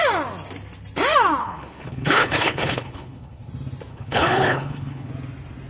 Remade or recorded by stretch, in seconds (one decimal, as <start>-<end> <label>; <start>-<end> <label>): 0.0-1.4 recorded; 1.4-3.5 remade; 3.5-3.9 recorded; 3.9-5.1 remade; 5.1-5.7 recorded